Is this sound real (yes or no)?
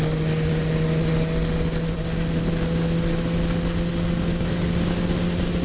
yes